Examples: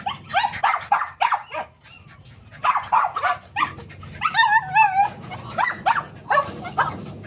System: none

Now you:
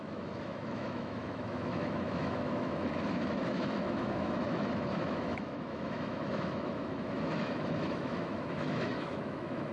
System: autoencoder, DAC-VAE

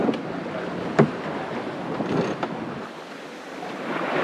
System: none